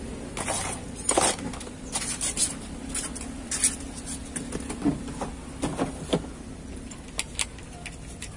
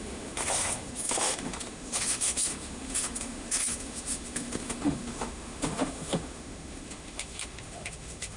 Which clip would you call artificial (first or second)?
second